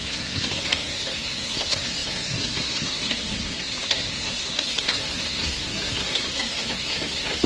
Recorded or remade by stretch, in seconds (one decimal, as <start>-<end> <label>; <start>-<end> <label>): 0.0-7.5 remade